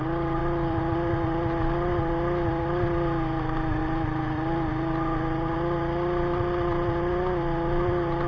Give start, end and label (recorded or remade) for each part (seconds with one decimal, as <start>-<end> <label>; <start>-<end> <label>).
0.0-8.3 recorded